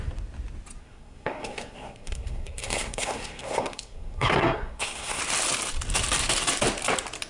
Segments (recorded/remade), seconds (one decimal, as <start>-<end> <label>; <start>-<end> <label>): 0.0-0.8 recorded; 0.8-5.2 remade; 5.2-7.3 recorded